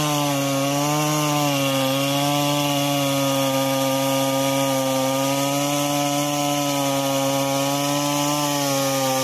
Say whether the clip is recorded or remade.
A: recorded